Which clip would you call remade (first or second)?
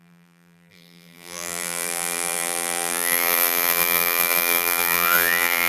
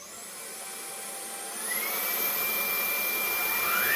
first